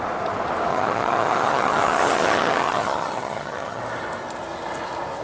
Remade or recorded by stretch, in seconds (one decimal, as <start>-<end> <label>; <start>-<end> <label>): 0.0-0.7 recorded; 0.7-3.8 remade; 3.8-5.2 recorded

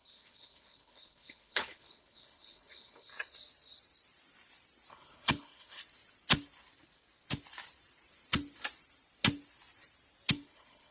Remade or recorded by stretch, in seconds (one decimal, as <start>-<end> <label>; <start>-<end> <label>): 0.0-3.1 remade; 3.1-4.9 recorded; 4.9-5.8 remade; 5.8-10.3 recorded; 10.3-10.9 remade